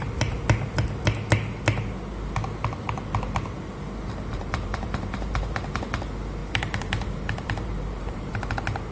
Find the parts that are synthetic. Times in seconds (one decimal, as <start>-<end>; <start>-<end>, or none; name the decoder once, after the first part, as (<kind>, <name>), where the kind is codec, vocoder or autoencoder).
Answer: 4.3-5.8 (vocoder, BigVGAN v2); 6.4-8.5